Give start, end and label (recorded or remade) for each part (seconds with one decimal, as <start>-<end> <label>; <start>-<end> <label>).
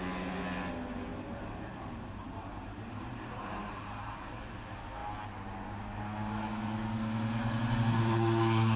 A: 0.0-1.1 recorded; 1.1-4.1 remade; 4.1-8.8 recorded